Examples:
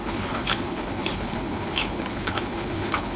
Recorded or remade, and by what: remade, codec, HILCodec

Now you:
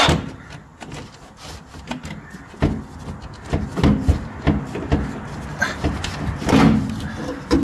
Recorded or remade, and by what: recorded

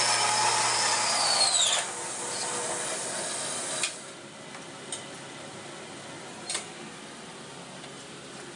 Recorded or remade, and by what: recorded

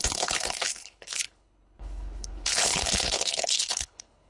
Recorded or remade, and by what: remade, codec, HILCodec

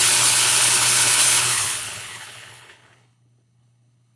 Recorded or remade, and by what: remade, codec, HILCodec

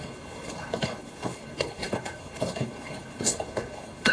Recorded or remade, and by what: remade, codec, HILCodec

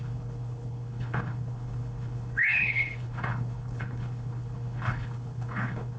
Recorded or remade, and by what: remade, codec, HILCodec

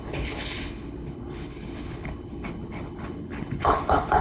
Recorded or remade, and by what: remade, codec, HILCodec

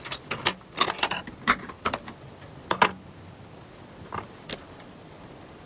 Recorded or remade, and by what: recorded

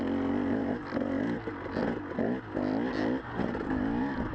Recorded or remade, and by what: recorded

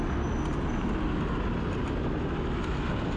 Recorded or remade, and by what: recorded